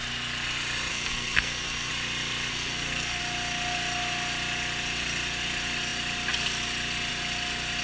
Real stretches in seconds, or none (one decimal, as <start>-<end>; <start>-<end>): 0.0-0.9; 1.9-2.5; 3.2-7.8